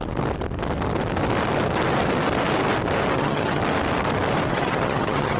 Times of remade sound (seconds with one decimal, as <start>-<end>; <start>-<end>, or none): 3.2-3.6; 4.5-5.4